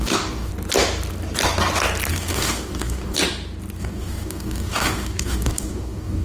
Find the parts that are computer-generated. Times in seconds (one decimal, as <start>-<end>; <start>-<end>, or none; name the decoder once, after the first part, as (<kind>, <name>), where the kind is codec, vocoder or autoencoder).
0.0-0.5 (codec, DAC); 2.1-3.2; 3.8-6.2

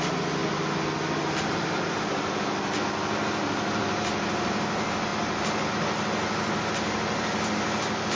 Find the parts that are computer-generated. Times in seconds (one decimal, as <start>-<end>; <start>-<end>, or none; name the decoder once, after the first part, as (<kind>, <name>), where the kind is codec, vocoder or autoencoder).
none

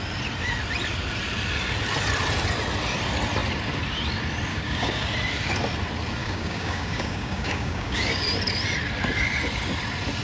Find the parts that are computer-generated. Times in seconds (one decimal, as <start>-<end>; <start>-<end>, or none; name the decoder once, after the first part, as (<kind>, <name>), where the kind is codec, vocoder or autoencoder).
4.5-5.1 (codec, DAC); 6.2-8.2

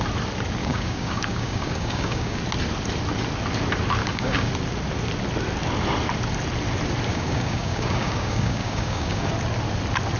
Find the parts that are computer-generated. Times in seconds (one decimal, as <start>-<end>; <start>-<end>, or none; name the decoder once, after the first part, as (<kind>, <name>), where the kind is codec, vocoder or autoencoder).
0.6-2.4 (codec, DAC); 4.0-4.5; 7.1-9.3